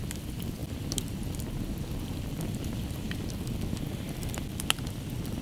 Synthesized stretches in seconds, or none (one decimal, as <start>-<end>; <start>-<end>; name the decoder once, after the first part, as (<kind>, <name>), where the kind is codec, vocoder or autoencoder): none